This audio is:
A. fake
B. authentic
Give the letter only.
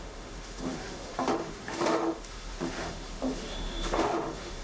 A